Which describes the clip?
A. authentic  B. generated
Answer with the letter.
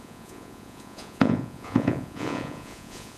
B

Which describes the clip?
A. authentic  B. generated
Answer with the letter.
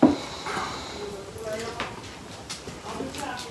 B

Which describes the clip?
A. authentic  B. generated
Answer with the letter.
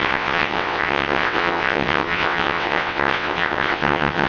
B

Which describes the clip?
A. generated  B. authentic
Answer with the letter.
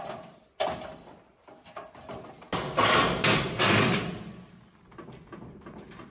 B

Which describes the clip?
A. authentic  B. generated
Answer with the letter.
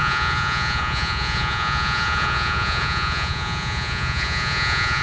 B